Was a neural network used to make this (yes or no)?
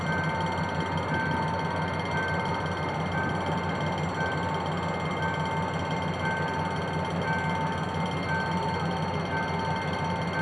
no